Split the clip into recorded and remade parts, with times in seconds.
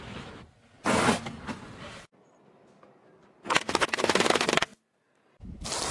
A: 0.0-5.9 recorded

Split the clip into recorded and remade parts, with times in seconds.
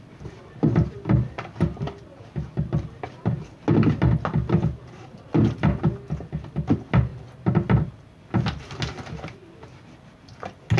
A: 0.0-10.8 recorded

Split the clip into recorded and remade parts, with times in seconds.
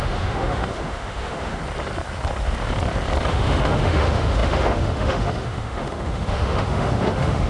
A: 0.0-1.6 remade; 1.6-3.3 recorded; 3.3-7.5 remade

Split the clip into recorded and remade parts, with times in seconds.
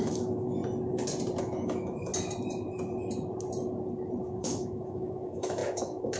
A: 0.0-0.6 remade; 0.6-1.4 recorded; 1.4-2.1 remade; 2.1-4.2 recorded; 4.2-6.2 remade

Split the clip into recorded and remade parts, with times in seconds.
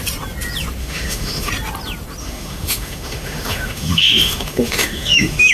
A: 0.0-0.8 recorded; 0.8-1.5 remade; 1.5-2.2 recorded; 2.2-5.5 remade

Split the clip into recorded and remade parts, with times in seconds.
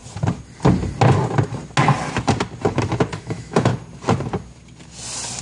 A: 0.0-3.2 recorded; 3.2-3.7 remade; 3.7-5.4 recorded